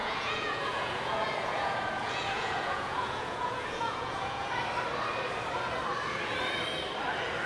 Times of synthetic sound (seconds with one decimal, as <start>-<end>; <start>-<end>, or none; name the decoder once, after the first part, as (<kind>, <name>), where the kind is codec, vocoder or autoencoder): 0.0-4.5 (vocoder, Vocos)